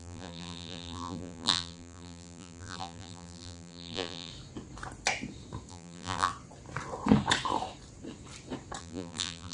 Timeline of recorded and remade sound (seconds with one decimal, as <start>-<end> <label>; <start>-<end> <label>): 0.0-4.3 remade; 4.3-5.7 recorded; 5.7-6.3 remade; 6.3-8.8 recorded; 8.8-9.5 remade